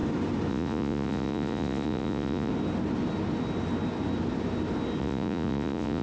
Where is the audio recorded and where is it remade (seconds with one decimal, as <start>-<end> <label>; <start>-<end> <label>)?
0.0-0.5 recorded; 0.5-2.5 remade; 2.5-5.0 recorded; 5.0-6.0 remade